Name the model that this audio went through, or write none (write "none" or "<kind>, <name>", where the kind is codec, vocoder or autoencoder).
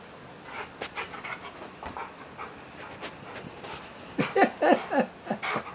none